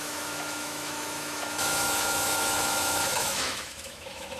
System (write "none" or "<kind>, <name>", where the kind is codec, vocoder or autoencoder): autoencoder, DAC-VAE